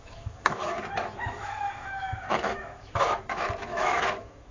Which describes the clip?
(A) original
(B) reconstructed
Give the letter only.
B